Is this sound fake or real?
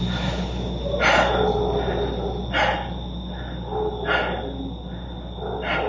real